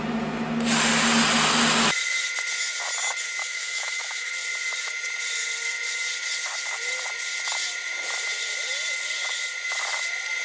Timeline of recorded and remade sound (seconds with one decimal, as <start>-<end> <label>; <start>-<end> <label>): 0.0-3.4 recorded; 3.4-4.3 remade; 4.3-10.4 recorded